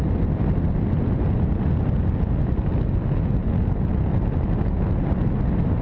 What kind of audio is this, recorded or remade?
recorded